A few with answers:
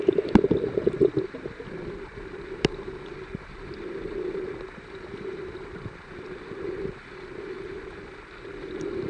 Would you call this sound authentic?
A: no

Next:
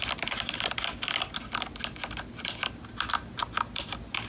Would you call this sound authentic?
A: yes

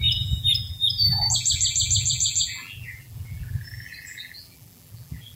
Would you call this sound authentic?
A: no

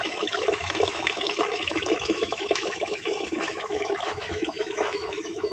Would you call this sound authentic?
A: no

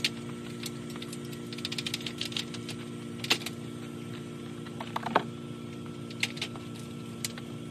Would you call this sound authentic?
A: yes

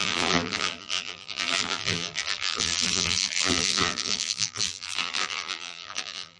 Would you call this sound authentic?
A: no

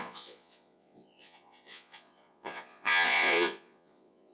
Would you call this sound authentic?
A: no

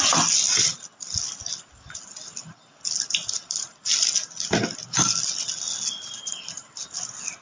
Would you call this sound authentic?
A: yes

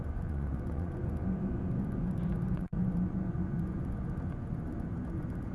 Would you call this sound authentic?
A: no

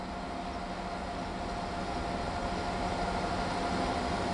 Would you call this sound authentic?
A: yes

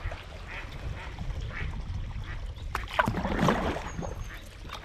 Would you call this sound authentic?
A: yes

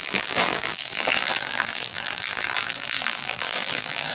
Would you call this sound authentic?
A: no